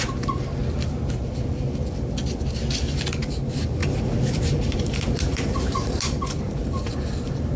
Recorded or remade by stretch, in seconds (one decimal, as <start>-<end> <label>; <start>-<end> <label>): 0.0-0.6 remade; 0.6-3.2 recorded; 3.2-7.6 remade